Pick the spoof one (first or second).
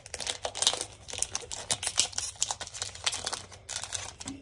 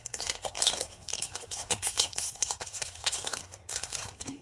second